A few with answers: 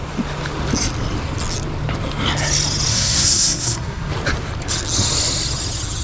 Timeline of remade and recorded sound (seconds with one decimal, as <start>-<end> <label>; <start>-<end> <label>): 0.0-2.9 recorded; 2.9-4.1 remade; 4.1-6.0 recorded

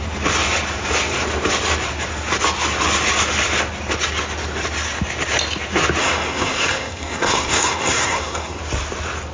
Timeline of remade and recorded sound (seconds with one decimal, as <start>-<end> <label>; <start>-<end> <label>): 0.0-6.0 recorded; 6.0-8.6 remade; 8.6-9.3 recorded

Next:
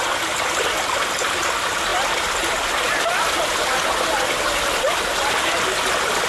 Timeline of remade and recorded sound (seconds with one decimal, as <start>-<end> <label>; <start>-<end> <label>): 0.0-6.3 recorded

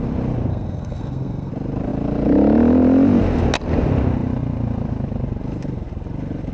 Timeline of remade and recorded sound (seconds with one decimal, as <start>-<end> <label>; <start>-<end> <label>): 0.0-0.5 recorded; 0.5-1.5 remade; 1.5-6.5 recorded